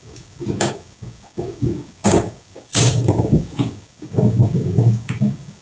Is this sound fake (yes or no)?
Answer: yes